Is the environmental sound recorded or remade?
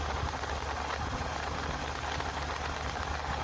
recorded